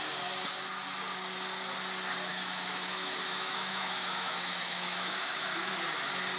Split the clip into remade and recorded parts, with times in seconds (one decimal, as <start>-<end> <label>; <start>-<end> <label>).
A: 0.0-2.3 recorded; 2.3-5.7 remade; 5.7-6.4 recorded